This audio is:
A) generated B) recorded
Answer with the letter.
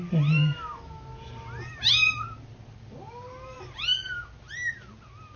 B